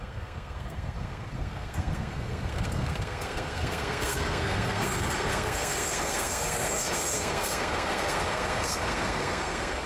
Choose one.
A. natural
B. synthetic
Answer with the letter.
B